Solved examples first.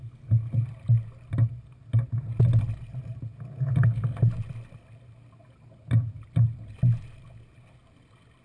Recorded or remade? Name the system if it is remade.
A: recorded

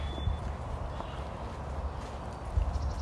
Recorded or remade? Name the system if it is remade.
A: recorded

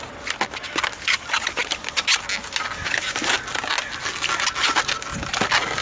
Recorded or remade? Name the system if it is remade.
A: recorded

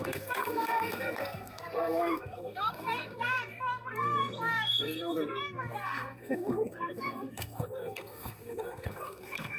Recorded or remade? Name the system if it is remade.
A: remade, codec, SNAC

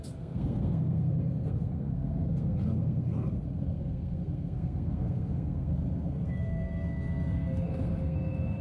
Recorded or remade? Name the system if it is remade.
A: remade, codec, SNAC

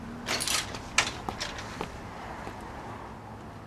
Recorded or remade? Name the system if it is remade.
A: recorded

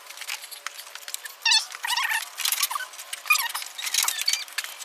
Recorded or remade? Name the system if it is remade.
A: recorded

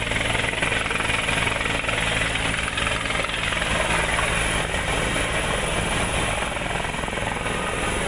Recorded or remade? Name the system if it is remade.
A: recorded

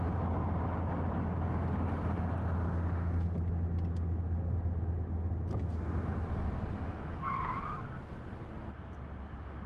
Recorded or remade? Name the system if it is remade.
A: recorded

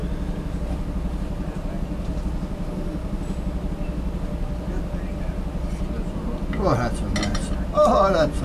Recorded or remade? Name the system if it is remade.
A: recorded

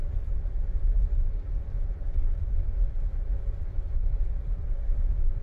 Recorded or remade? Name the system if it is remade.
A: recorded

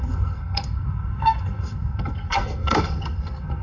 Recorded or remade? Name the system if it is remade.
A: remade, codec, SNAC